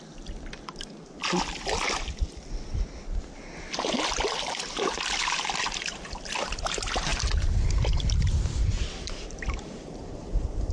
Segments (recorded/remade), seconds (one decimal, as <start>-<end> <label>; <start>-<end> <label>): 0.0-7.1 recorded; 7.1-10.7 remade